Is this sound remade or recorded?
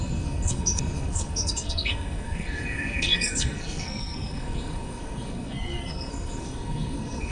remade